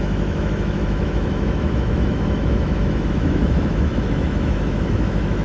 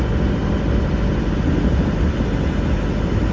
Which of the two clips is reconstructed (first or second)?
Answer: first